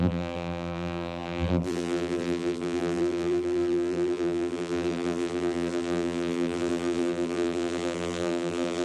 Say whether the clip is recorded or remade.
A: remade